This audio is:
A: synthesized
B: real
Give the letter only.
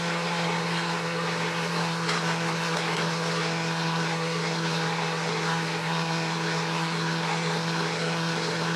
A